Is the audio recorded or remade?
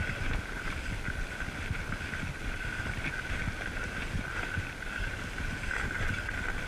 recorded